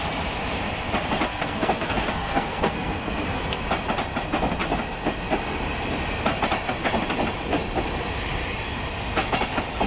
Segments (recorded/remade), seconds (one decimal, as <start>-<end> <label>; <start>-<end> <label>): 0.0-1.3 recorded; 1.3-3.4 remade; 3.4-9.9 recorded